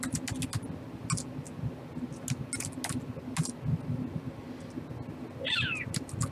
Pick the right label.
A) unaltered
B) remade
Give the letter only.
A